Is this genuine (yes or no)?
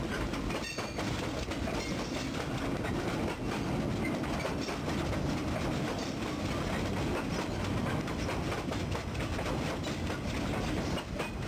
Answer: yes